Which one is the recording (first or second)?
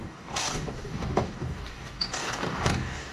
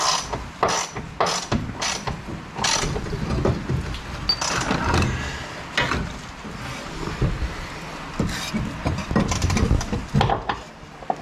second